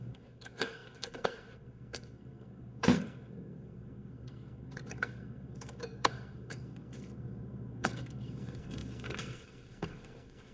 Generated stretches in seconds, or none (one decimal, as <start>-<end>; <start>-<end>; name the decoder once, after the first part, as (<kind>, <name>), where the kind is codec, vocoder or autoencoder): 0.0-10.5 (codec, SNAC)